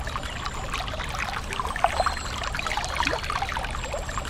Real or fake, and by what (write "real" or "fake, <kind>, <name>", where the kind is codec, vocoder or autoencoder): real